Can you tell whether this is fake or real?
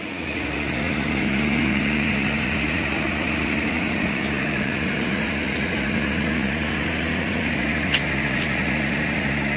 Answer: fake